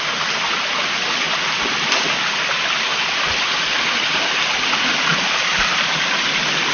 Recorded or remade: recorded